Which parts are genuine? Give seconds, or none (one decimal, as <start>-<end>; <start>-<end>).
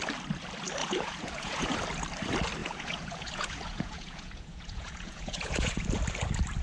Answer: 0.0-0.8; 1.8-2.6; 5.8-6.6